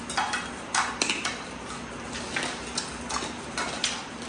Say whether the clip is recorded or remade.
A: recorded